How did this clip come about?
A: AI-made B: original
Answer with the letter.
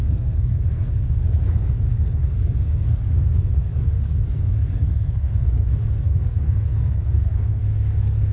A